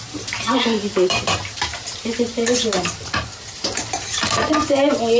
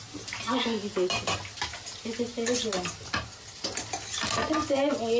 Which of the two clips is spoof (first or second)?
first